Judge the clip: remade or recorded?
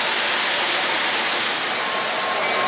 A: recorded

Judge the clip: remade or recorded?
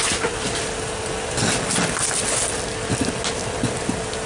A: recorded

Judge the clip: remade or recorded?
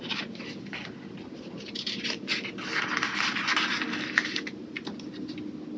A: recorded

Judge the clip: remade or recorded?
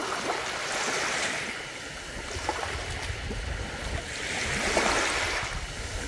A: recorded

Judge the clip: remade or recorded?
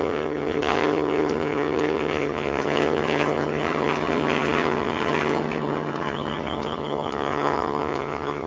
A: remade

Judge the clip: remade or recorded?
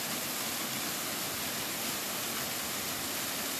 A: recorded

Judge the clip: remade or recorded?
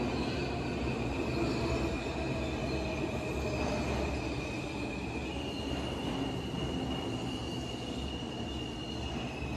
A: recorded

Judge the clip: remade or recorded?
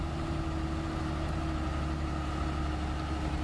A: recorded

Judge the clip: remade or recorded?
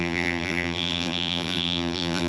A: remade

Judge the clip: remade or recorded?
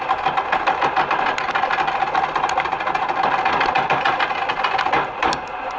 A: recorded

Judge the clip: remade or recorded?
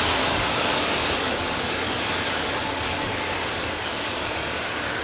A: remade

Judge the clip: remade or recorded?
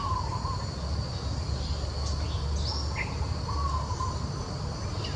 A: recorded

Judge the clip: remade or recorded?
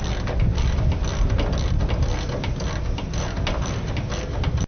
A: recorded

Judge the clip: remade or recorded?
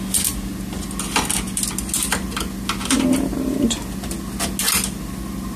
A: recorded